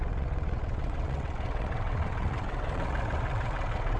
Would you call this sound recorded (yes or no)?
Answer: no